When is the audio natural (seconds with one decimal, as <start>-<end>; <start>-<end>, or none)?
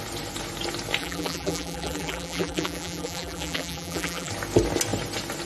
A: 0.0-1.0; 4.3-5.5